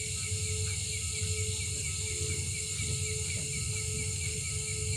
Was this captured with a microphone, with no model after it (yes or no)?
yes